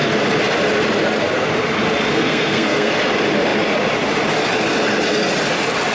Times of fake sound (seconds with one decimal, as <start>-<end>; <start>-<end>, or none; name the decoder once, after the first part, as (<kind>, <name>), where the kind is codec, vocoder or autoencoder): 2.1-2.9 (codec, SNAC)